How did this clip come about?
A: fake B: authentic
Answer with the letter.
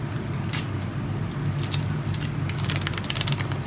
B